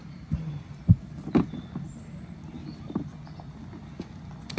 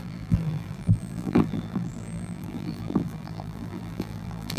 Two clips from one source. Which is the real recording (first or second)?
first